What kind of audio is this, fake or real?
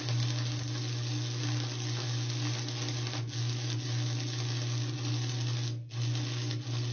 real